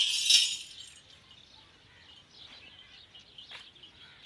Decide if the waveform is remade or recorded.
recorded